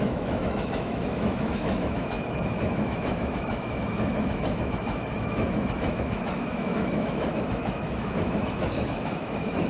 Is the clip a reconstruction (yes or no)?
yes